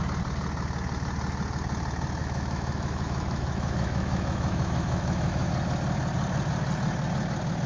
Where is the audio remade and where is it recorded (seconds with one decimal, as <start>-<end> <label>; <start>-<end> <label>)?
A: 0.0-2.2 recorded; 2.2-5.5 remade; 5.5-7.7 recorded